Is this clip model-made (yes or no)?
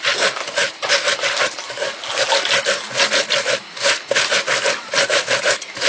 no